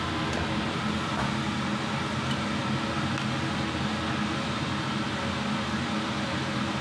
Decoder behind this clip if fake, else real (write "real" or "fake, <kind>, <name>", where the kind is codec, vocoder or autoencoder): real